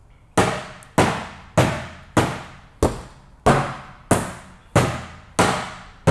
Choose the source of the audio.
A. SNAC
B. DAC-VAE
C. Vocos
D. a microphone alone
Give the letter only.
D